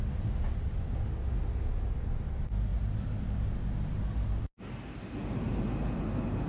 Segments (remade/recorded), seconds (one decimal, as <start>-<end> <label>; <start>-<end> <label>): 0.0-6.5 recorded